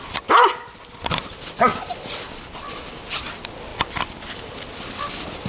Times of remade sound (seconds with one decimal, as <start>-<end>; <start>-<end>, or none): 1.7-3.2; 3.7-4.6